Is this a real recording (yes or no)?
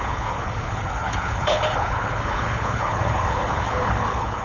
no